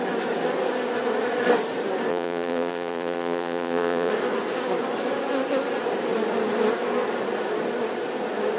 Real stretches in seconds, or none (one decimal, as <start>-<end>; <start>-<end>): 0.0-2.1; 4.1-8.6